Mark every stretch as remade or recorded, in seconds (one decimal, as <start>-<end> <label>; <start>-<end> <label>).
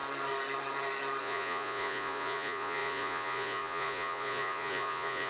0.0-1.2 recorded; 1.2-5.3 remade